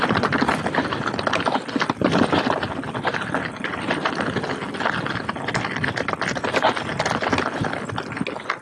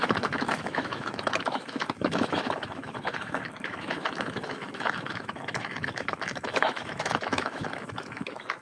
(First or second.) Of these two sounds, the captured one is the first